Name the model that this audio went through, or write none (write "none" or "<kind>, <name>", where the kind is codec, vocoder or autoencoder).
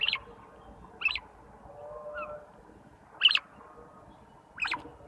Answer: none